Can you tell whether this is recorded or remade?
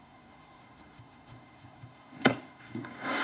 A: remade